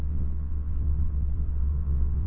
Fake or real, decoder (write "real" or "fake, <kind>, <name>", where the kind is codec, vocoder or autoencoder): fake, vocoder, WaveNeXt